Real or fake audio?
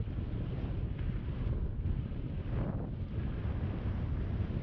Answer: real